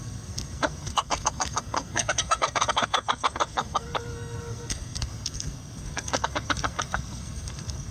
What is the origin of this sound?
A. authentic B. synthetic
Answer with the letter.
B